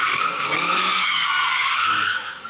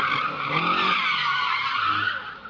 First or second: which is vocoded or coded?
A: first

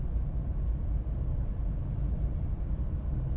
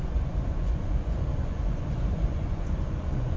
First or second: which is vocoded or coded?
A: second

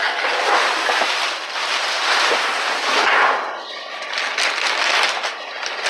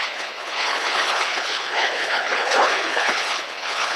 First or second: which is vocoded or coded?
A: second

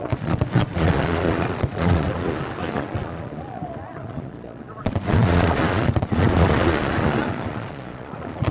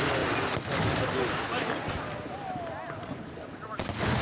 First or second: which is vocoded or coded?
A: first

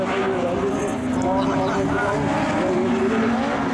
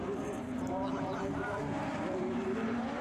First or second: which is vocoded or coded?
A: second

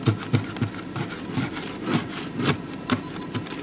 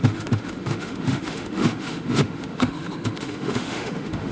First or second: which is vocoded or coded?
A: second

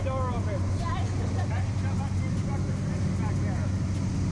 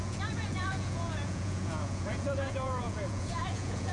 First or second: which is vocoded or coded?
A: second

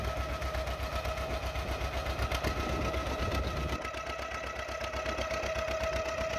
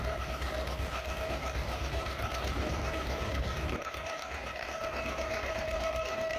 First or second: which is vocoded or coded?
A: second